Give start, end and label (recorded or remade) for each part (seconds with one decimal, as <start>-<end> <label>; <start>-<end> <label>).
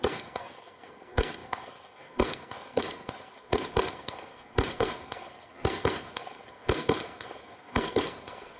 0.0-8.6 remade